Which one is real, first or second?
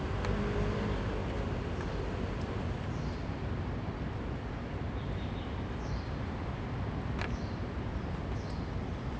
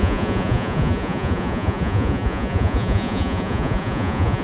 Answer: first